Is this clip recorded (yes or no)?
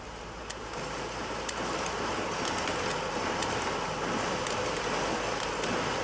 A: yes